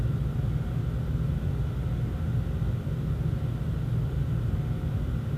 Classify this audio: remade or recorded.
recorded